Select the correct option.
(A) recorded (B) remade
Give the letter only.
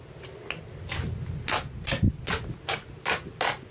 A